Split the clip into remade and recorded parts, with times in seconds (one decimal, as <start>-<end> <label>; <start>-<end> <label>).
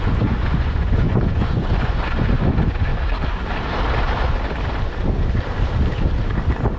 0.0-2.9 remade; 2.9-6.8 recorded